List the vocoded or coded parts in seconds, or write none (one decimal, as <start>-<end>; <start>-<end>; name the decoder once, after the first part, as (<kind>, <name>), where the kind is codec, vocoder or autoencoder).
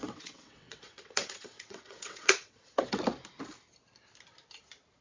0.0-3.0 (vocoder, WaveNeXt)